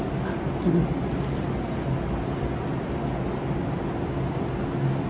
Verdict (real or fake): real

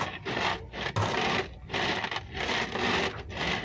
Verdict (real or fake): real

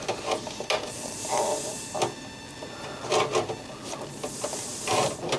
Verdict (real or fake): real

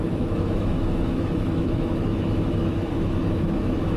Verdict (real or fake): fake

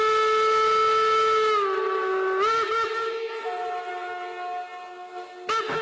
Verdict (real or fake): real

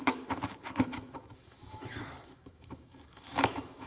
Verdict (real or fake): fake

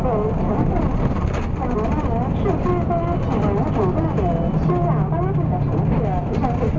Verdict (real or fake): real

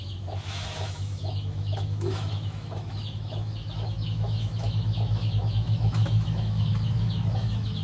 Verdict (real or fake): fake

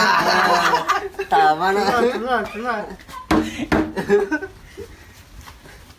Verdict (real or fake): real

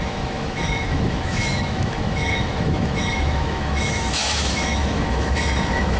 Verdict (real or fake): fake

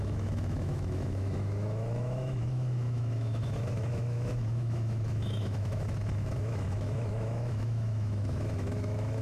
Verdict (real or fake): fake